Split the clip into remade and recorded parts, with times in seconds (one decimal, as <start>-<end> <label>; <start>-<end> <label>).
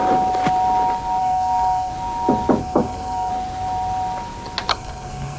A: 0.0-1.2 recorded; 1.2-1.9 remade; 1.9-2.6 recorded; 2.6-3.3 remade; 3.3-4.7 recorded; 4.7-5.4 remade